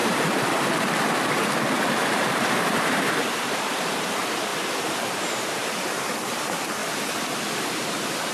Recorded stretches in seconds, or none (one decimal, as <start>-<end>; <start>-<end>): 0.0-2.3; 4.5-5.3; 6.8-7.6